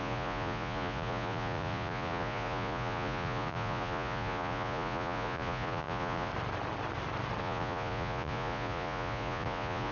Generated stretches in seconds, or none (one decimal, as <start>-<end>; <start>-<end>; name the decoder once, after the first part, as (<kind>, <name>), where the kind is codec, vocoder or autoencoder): 0.0-6.3 (vocoder, Vocos); 7.4-9.9